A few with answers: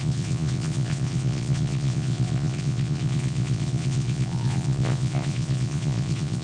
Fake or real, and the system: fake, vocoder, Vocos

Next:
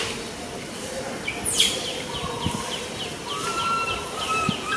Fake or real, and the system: fake, vocoder, BigVGAN v2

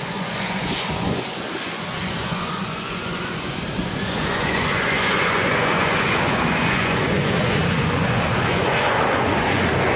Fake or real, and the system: fake, vocoder, Vocos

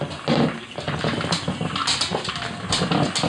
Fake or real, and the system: real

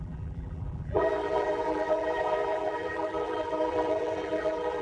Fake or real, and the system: fake, vocoder, BigVGAN v2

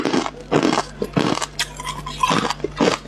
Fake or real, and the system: real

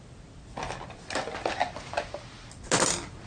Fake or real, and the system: real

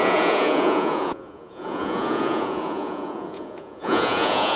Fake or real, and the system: fake, vocoder, Vocos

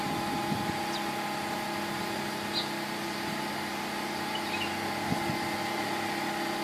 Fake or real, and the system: real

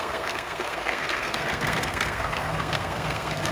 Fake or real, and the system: fake, codec, SNAC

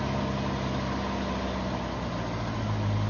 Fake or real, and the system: real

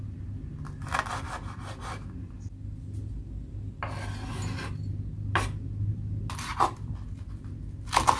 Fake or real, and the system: real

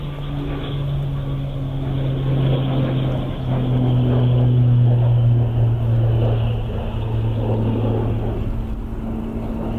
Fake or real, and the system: real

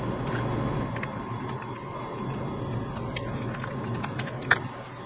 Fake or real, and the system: real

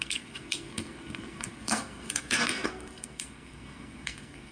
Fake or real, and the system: fake, codec, SNAC